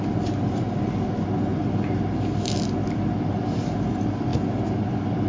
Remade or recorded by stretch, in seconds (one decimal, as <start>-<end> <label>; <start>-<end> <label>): 0.0-5.3 recorded